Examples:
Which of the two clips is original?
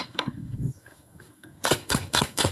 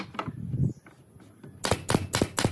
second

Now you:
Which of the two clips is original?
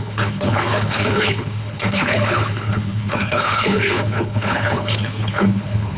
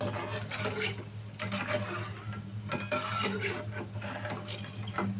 second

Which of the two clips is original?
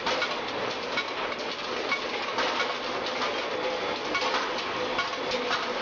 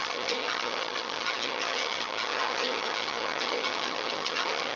first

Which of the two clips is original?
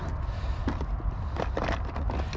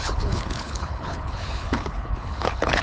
first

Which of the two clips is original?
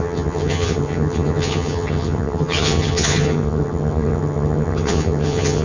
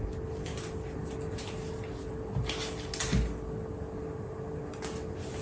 second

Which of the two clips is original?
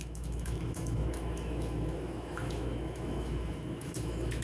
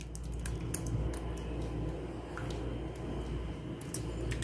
second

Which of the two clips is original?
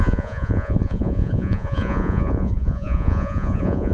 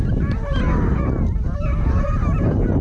second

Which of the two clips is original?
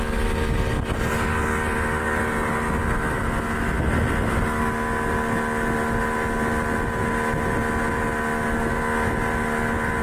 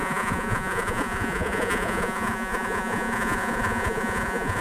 first